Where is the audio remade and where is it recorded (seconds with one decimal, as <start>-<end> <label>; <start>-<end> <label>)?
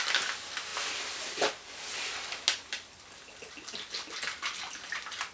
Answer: 0.0-5.3 recorded